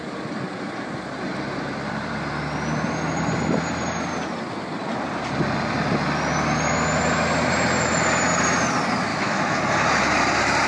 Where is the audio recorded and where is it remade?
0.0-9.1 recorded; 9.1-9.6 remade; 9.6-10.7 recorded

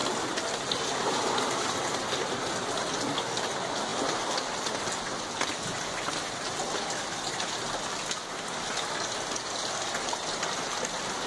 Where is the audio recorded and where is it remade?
0.0-11.3 recorded

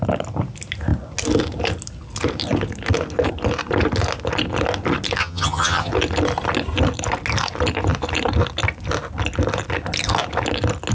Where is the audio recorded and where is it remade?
0.0-5.2 recorded; 5.2-5.9 remade; 5.9-10.9 recorded

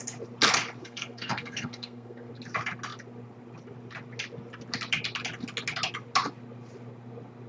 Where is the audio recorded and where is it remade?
0.0-0.8 recorded; 0.8-2.3 remade; 2.3-7.5 recorded